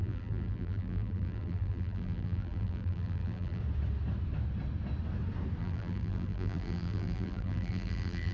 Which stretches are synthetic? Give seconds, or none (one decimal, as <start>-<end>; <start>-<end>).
0.0-3.6; 5.6-8.3